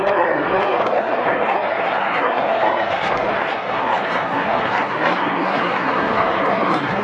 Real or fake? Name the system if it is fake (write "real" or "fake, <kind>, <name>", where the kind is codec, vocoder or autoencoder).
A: fake, codec, SNAC